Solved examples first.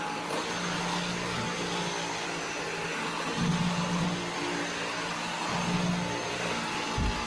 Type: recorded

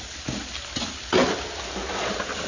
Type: recorded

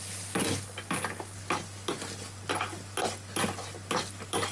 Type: recorded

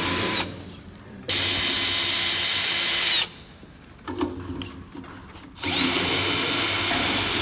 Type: recorded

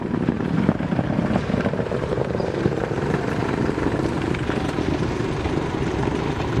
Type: remade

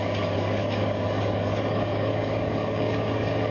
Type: remade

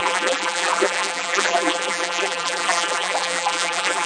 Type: remade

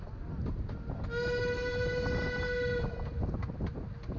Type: recorded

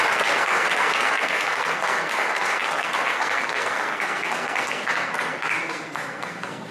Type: remade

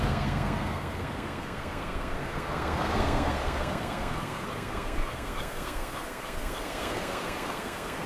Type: remade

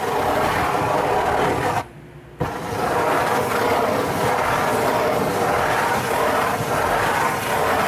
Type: recorded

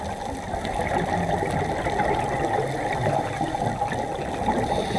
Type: recorded